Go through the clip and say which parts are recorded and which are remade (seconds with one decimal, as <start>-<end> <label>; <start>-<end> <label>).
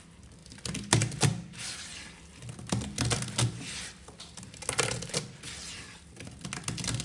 0.0-7.0 recorded